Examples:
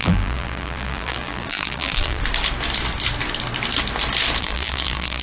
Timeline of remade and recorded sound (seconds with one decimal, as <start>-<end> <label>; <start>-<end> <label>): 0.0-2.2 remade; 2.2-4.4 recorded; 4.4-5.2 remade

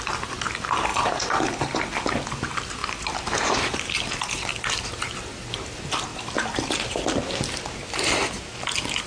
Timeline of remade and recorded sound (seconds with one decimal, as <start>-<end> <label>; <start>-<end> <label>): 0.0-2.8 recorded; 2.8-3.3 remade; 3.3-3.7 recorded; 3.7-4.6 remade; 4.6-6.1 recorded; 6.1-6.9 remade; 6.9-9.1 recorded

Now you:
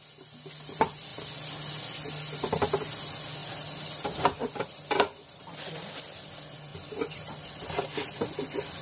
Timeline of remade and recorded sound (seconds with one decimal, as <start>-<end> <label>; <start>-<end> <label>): 0.0-3.4 recorded; 3.4-6.0 remade; 6.0-6.7 recorded; 6.7-7.7 remade; 7.7-8.8 recorded

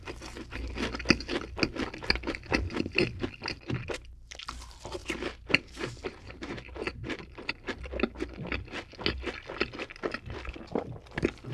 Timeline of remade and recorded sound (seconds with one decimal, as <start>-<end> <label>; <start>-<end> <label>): 0.0-5.0 recorded; 5.0-7.5 remade; 7.5-11.5 recorded

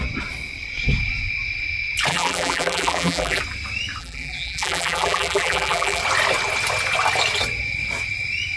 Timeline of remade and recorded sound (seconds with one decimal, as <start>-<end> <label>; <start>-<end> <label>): 0.0-2.1 recorded; 2.1-3.4 remade; 3.4-4.0 recorded; 4.0-6.0 remade; 6.0-8.6 recorded